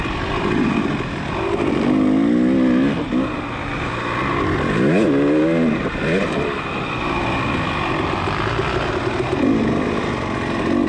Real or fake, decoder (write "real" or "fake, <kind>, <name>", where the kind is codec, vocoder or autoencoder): real